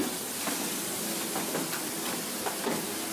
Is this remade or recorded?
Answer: recorded